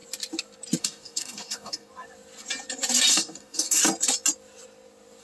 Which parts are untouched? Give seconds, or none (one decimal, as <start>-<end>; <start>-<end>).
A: 0.0-0.8; 1.9-3.1; 3.8-5.2